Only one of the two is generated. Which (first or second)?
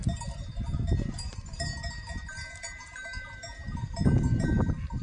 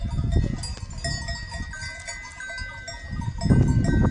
first